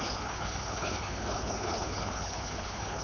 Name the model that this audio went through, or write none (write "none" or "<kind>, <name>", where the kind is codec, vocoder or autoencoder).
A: codec, HILCodec